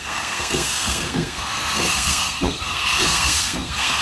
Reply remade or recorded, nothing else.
remade